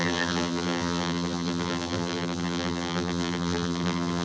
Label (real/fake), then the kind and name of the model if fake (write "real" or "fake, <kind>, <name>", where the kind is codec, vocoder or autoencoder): fake, vocoder, BigVGAN v2